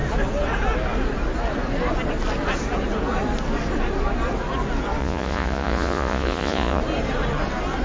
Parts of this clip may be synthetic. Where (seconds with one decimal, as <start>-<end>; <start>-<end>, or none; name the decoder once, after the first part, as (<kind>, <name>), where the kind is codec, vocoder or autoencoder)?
5.0-6.8 (vocoder, Vocos)